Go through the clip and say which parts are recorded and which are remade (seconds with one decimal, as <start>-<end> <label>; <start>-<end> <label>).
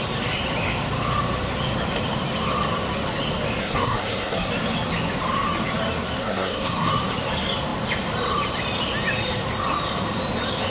0.0-3.6 recorded; 3.6-4.5 remade; 4.5-6.2 recorded; 6.2-6.9 remade; 6.9-10.7 recorded